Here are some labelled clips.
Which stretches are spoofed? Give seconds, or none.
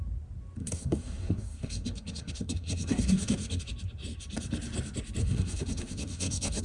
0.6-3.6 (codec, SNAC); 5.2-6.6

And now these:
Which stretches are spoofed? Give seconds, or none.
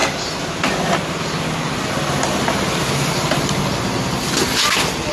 none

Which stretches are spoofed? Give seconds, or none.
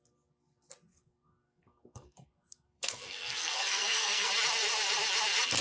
0.9-4.3 (codec, SNAC)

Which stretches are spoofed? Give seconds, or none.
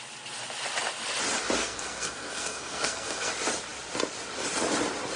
1.6-3.3 (codec, SNAC)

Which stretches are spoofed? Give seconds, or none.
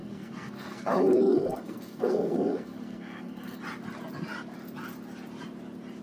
0.0-3.6 (codec, SNAC)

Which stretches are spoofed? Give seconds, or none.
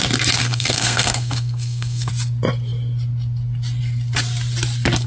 0.4-2.1 (codec, SNAC)